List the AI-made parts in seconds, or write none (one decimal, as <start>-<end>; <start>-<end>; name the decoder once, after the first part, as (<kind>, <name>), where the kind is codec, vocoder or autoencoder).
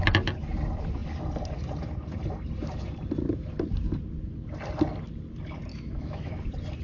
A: 5.7-6.3 (autoencoder, DAC-VAE)